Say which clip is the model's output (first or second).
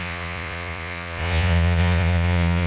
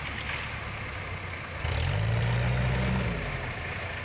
first